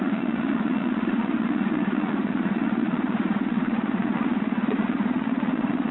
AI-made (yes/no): yes